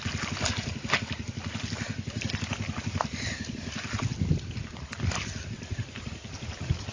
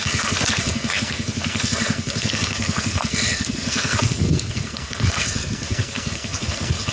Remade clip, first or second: second